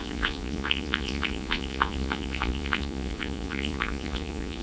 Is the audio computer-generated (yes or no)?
yes